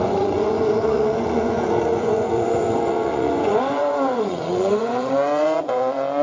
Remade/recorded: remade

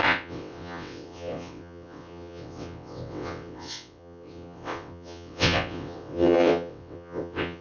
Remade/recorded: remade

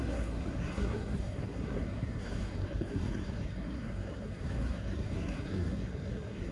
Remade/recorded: remade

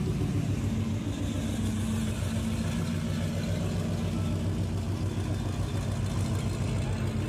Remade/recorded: recorded